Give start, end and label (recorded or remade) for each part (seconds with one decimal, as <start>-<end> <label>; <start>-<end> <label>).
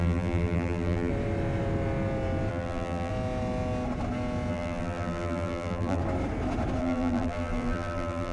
0.0-1.1 remade; 1.1-2.5 recorded; 2.5-3.1 remade; 3.1-4.5 recorded; 4.5-6.0 remade; 6.0-6.8 recorded; 6.8-8.3 remade